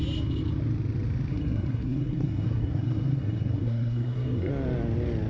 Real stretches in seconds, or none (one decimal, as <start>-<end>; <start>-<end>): 0.0-1.3; 4.5-5.3